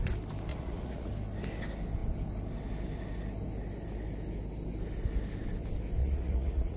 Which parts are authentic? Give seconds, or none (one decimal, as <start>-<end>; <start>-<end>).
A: 0.0-0.5; 1.1-6.0